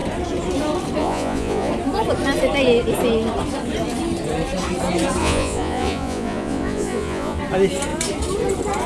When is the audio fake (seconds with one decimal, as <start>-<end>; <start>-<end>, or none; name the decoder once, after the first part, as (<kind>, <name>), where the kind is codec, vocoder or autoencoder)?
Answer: 1.0-1.7 (vocoder, Vocos); 5.2-7.4